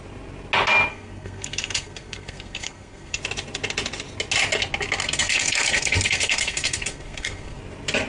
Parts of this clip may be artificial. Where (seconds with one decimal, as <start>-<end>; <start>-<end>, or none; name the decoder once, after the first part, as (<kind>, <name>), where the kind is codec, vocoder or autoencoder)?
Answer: 0.9-3.2 (codec, SNAC); 5.0-7.6